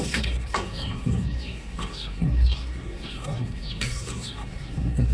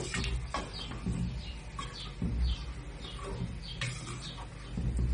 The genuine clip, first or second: second